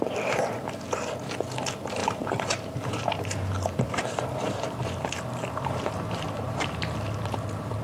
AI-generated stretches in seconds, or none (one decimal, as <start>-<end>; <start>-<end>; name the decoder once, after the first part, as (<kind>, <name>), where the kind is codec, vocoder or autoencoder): 2.0-6.7 (vocoder, BigVGAN v2)